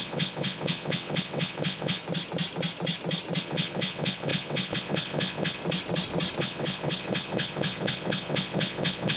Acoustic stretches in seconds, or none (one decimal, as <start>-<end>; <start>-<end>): 2.0-3.4; 5.6-6.4